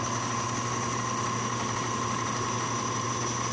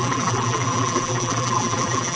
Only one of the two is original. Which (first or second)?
first